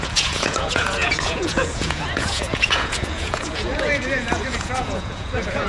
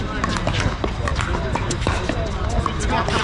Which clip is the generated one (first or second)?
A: first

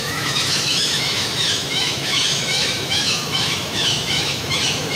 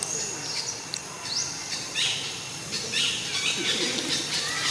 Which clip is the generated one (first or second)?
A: first